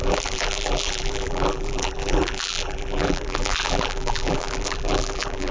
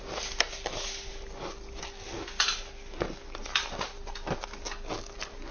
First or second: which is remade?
first